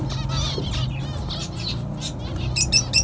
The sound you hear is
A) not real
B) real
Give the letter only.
B